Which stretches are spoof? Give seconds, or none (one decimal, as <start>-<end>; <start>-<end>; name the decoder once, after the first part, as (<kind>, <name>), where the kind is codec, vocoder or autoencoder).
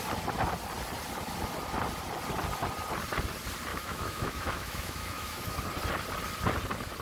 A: 3.7-5.6 (autoencoder, DAC-VAE)